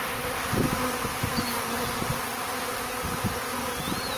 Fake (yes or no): no